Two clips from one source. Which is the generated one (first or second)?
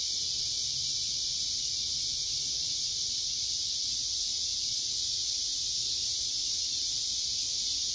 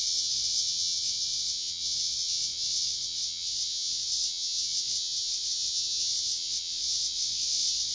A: second